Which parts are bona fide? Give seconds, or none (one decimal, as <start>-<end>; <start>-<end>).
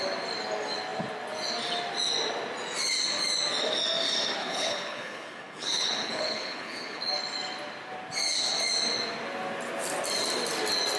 0.0-4.4; 7.0-11.0